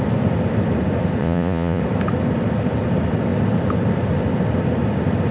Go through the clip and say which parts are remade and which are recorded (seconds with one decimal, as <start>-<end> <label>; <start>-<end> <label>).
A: 0.0-1.2 recorded; 1.2-1.8 remade; 1.8-5.3 recorded